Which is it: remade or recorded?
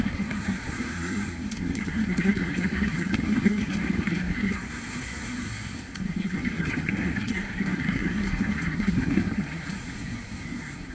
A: remade